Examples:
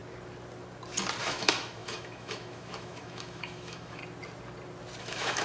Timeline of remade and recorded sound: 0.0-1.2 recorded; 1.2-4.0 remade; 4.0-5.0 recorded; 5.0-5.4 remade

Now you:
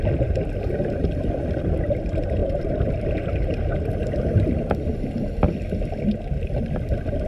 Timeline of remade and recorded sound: 0.0-2.4 recorded; 2.4-3.7 remade; 3.7-7.3 recorded

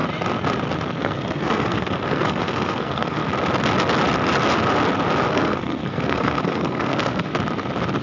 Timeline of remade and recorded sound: 0.0-1.0 recorded; 1.0-3.2 remade; 3.2-5.3 recorded; 5.3-7.3 remade; 7.3-8.0 recorded

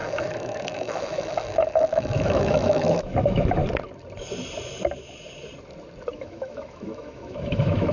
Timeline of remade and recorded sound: 0.0-3.6 remade; 3.6-6.1 recorded; 6.1-7.9 remade

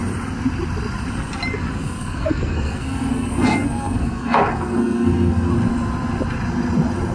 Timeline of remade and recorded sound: 0.0-1.8 recorded; 1.8-5.5 remade; 5.5-7.1 recorded

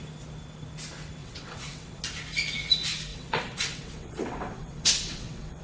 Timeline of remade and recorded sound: 0.0-1.2 recorded; 1.2-2.0 remade; 2.0-3.1 recorded; 3.1-5.6 remade

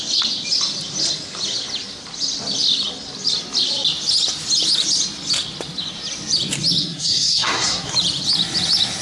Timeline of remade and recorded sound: 0.0-6.8 recorded; 6.8-7.9 remade; 7.9-9.0 recorded

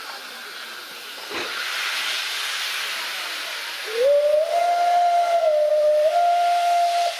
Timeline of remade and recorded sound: 0.0-7.2 recorded